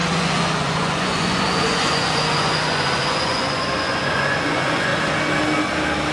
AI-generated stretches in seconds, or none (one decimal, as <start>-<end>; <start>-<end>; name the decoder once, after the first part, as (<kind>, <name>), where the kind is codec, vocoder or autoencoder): 0.0-4.9 (vocoder, Vocos)